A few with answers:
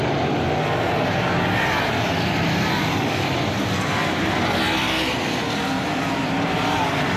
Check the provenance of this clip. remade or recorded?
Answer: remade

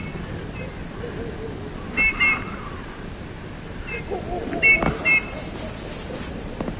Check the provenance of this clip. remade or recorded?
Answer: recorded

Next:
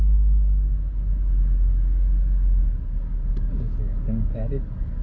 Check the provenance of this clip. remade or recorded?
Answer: remade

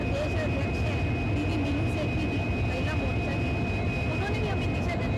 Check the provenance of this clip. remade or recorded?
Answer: recorded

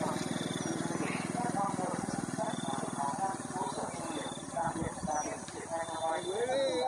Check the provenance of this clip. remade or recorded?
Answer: recorded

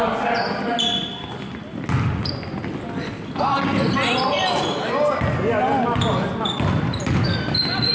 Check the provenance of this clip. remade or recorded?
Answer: recorded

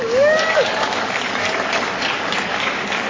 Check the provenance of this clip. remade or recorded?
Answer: remade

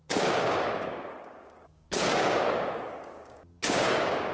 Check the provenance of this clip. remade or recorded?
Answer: remade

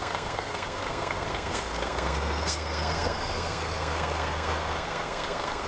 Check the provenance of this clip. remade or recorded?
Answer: remade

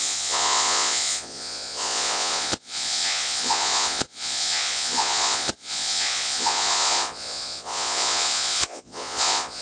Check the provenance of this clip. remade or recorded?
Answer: remade